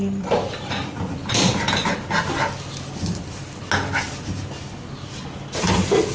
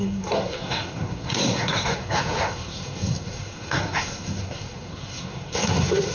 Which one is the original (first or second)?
first